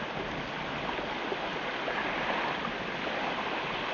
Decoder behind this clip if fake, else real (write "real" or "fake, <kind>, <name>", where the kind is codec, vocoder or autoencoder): real